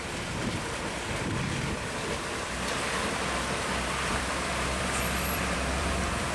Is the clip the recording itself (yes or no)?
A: no